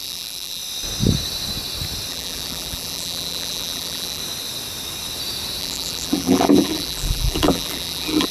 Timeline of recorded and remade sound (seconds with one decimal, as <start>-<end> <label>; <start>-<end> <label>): 0.0-0.6 remade; 0.6-2.1 recorded; 2.1-4.2 remade; 4.2-5.6 recorded; 5.6-8.3 remade